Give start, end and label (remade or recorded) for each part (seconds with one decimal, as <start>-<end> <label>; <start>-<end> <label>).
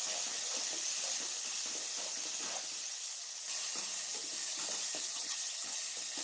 0.0-5.1 recorded; 5.1-5.8 remade; 5.8-6.2 recorded